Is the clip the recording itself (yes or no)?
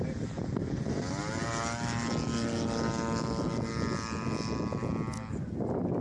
yes